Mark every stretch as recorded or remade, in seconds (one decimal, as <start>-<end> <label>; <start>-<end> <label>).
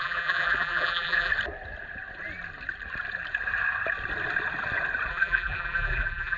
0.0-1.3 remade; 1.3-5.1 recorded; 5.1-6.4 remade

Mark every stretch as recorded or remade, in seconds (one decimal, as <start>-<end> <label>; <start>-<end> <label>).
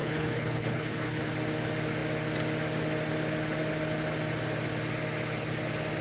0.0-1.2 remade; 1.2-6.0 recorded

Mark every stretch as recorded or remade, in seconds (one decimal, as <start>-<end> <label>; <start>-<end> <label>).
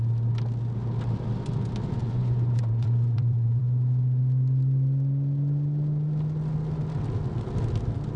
0.0-2.0 recorded; 2.0-3.6 remade; 3.6-8.2 recorded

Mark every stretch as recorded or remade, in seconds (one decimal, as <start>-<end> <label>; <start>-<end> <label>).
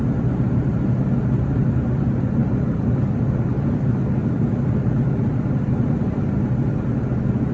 0.0-2.4 recorded; 2.4-3.2 remade; 3.2-4.2 recorded; 4.2-5.4 remade; 5.4-7.5 recorded